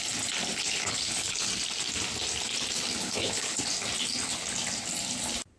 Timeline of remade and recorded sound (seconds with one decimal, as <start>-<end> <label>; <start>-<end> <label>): 0.0-0.5 recorded; 0.5-1.5 remade; 1.5-3.0 recorded; 3.0-3.6 remade; 3.6-5.6 recorded